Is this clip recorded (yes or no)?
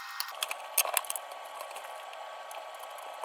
yes